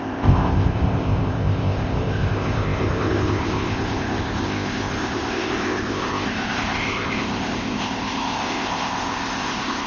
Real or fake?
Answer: fake